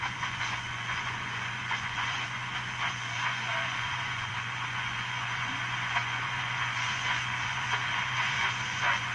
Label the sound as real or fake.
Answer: fake